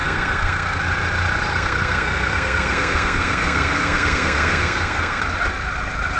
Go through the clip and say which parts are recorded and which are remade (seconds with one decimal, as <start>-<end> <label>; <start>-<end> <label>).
0.0-0.8 remade; 0.8-1.5 recorded; 1.5-5.2 remade; 5.2-6.2 recorded